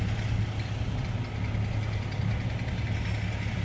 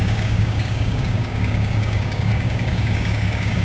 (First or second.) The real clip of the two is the first